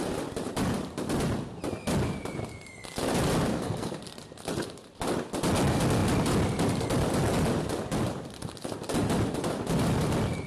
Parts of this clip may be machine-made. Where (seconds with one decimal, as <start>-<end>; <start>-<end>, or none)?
3.5-4.0